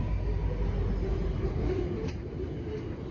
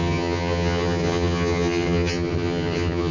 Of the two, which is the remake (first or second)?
second